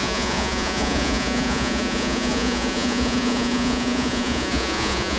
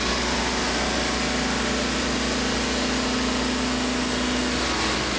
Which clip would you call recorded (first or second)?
second